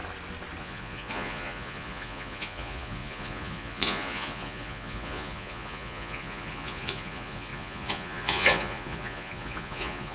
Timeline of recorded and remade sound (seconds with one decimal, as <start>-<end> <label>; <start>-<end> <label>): 0.0-0.6 recorded; 0.6-10.1 remade